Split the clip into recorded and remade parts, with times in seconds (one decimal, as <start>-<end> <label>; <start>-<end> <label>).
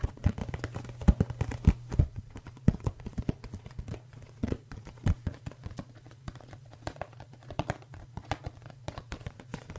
0.0-0.4 remade; 0.4-2.0 recorded; 2.0-9.8 remade